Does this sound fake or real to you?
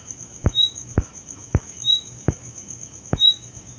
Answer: fake